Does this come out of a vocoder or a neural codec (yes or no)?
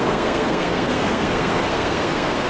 yes